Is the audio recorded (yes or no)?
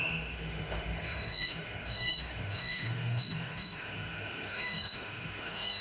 no